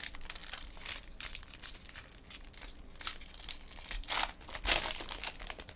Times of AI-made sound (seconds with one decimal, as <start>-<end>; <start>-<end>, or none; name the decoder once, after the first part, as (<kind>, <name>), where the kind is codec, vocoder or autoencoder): 0.4-2.7 (vocoder, BigVGAN v2)